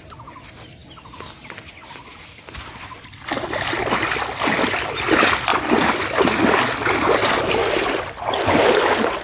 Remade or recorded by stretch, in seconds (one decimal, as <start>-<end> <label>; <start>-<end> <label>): 0.0-9.2 recorded